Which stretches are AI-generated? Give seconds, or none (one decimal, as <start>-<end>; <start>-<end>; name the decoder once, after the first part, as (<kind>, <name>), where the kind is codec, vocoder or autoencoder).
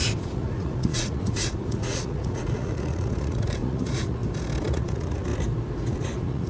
0.0-4.2 (vocoder, Vocos); 4.7-5.3; 5.9-6.5